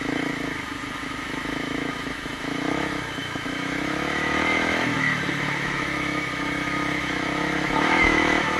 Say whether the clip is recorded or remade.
remade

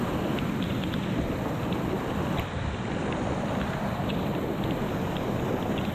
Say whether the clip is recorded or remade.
recorded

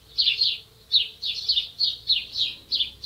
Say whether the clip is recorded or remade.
recorded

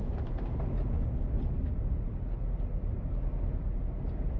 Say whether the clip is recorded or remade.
recorded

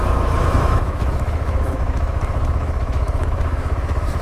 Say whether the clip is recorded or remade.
remade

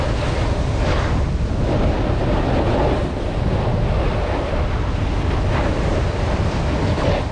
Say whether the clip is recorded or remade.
recorded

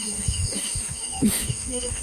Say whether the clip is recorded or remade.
remade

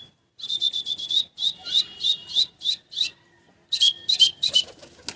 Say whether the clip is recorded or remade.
recorded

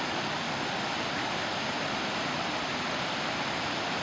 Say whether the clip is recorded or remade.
recorded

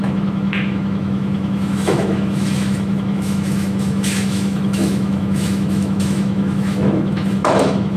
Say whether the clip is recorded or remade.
remade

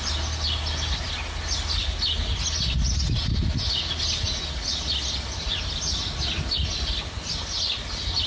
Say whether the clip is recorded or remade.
recorded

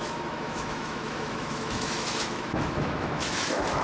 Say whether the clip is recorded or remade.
remade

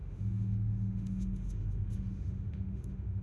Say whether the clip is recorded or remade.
remade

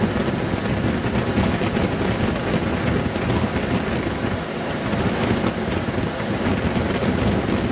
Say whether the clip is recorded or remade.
recorded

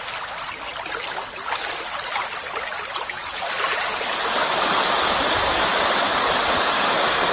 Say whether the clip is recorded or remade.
recorded